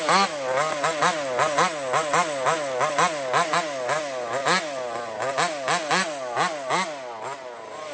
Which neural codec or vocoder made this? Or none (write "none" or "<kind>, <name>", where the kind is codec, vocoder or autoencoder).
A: none